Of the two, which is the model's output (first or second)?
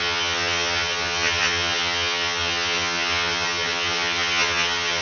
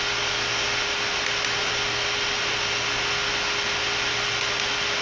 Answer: first